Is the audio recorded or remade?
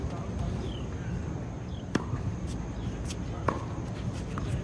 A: recorded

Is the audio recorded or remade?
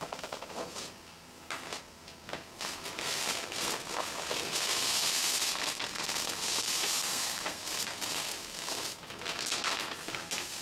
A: remade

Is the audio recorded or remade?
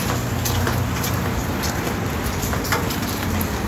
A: recorded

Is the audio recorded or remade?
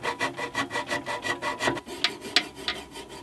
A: recorded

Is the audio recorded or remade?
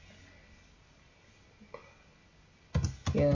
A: recorded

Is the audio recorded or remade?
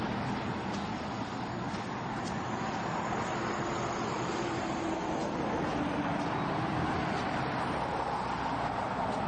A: recorded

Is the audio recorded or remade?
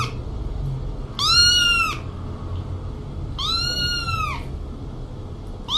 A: recorded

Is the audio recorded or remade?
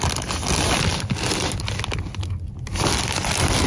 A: recorded